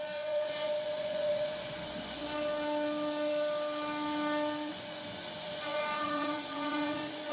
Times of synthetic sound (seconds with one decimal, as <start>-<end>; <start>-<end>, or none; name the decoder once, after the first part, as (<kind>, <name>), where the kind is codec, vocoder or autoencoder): 0.0-2.2 (vocoder, Vocos); 4.7-7.3